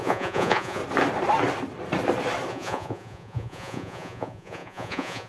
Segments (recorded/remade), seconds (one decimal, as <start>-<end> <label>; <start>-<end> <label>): 0.0-0.8 remade; 0.8-2.5 recorded; 2.5-5.3 remade